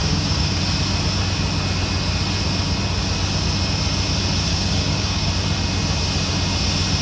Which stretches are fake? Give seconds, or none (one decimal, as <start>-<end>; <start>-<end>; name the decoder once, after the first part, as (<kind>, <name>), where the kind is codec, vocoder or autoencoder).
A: 0.0-0.6 (codec, DAC); 4.5-5.3